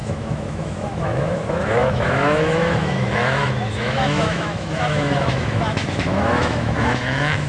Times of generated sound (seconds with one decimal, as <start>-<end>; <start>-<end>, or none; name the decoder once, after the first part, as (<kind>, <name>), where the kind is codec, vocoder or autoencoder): 0.0-7.5 (autoencoder, DAC-VAE)